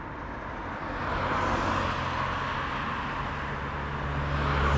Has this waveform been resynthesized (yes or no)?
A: no